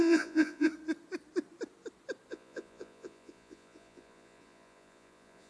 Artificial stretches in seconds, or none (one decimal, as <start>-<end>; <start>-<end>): 0.0-0.7; 2.3-5.5